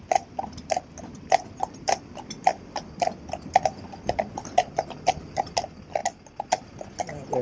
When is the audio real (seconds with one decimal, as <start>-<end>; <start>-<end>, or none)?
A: 6.0-6.5